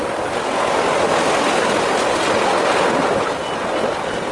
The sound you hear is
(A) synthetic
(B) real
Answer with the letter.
B